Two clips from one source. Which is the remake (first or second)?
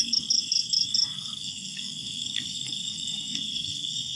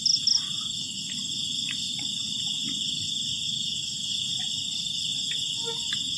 first